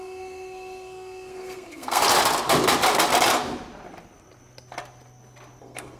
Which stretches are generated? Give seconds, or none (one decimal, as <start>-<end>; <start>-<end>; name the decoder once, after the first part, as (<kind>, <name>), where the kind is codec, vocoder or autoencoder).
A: 0.0-2.0 (codec, SNAC); 5.6-6.0